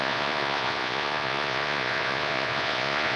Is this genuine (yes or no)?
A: no